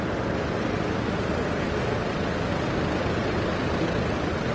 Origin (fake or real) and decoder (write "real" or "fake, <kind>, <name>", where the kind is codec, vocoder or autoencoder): real